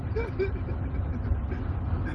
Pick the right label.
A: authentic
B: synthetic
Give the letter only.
A